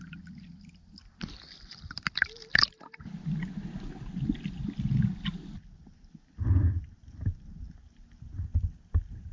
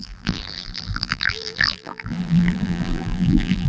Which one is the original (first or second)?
first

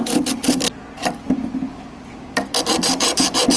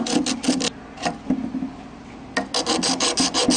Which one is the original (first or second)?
second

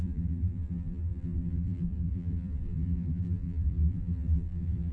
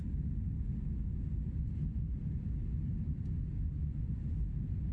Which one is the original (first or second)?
second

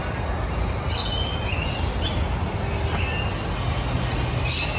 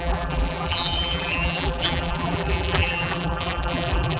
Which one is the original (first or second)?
first